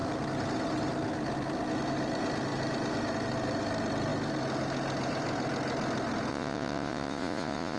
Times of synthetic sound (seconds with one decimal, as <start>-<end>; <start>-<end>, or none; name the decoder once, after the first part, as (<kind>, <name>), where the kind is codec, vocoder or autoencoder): 6.3-7.8 (vocoder, Vocos)